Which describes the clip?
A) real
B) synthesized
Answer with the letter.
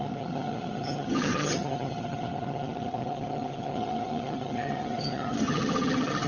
B